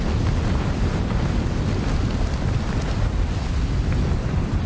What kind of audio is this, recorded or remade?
recorded